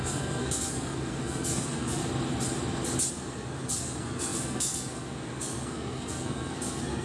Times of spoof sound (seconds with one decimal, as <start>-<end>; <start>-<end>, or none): 0.0-2.0; 3.1-7.0